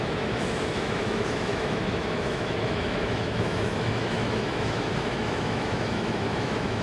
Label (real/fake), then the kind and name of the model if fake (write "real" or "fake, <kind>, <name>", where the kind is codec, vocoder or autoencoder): fake, autoencoder, DAC-VAE